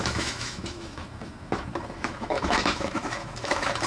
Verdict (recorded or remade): remade